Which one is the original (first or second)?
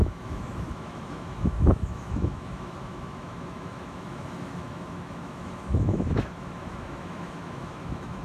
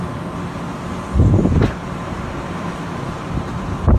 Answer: second